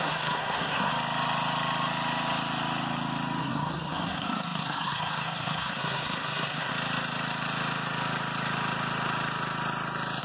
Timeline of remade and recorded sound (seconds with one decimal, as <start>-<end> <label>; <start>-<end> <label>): 0.0-0.9 remade; 0.9-3.4 recorded; 3.4-6.7 remade; 6.7-10.2 recorded